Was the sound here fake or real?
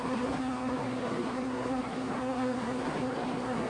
fake